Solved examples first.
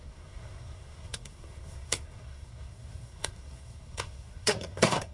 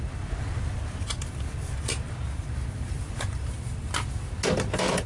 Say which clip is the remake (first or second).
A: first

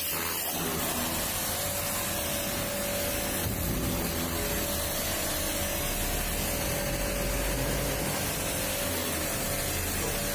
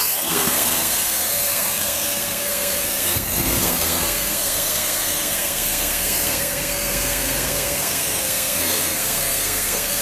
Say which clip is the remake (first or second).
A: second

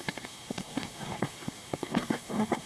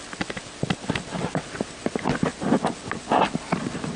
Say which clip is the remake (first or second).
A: first